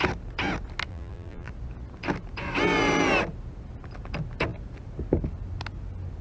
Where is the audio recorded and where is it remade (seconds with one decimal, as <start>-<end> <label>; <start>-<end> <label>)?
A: 0.0-0.9 recorded; 0.9-1.5 remade; 1.5-6.2 recorded